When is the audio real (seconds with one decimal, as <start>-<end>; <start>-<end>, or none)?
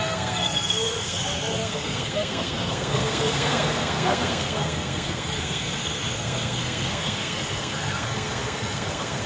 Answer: none